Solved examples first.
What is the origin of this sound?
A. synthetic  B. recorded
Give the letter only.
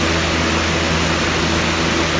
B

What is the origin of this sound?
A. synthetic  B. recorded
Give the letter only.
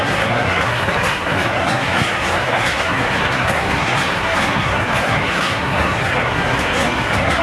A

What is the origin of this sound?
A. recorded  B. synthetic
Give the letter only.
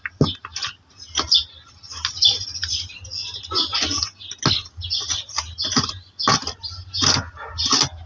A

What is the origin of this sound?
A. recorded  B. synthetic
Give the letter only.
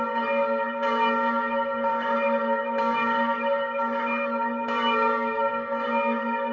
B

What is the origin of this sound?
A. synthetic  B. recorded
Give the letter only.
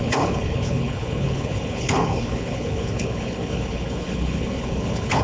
A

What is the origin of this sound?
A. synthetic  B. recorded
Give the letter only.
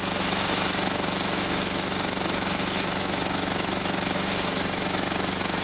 A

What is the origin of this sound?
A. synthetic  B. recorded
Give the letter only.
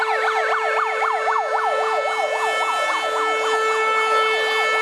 B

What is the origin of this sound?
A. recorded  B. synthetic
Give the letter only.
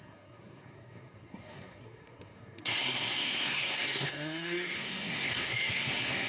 B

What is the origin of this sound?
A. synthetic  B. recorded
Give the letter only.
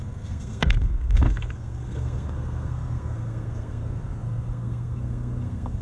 A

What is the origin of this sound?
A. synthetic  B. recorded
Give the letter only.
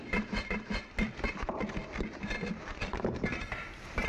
B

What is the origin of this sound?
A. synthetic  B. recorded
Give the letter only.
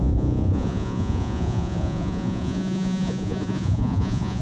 A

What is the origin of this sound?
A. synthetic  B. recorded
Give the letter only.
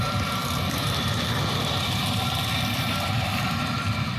A